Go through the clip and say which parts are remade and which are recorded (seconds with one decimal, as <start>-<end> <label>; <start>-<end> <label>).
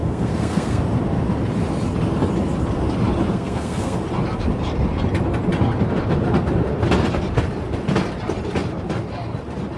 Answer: 0.0-0.8 remade; 0.8-3.3 recorded; 3.3-4.0 remade; 4.0-9.8 recorded